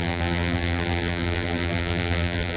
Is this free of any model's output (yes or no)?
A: no